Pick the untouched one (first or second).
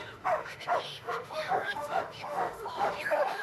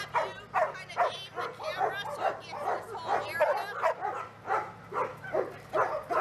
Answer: second